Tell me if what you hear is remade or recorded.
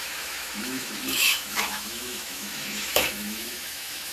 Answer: remade